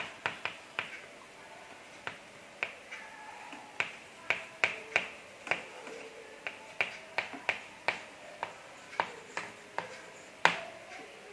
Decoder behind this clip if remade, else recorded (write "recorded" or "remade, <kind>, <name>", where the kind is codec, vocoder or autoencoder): recorded